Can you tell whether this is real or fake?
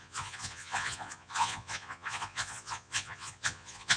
fake